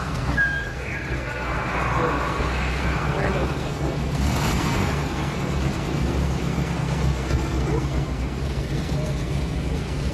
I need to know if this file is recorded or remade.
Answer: remade